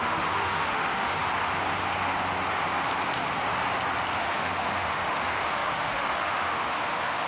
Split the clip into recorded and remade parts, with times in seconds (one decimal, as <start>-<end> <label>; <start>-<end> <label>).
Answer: 0.0-1.2 remade; 1.2-4.2 recorded; 4.2-7.3 remade